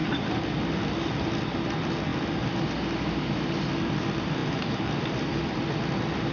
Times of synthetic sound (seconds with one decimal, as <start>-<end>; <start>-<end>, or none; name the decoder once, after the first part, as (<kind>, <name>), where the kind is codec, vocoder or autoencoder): none